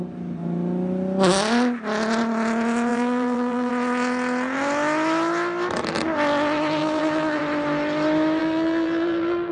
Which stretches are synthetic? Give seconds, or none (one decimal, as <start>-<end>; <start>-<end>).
2.9-3.7; 6.8-7.4; 8.4-9.5